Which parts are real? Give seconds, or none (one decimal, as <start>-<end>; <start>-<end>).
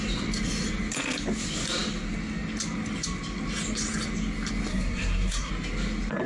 0.0-4.7; 5.5-6.3